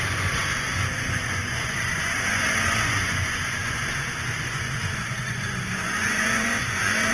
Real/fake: fake